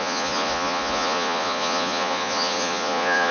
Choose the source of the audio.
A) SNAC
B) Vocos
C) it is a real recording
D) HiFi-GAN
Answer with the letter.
B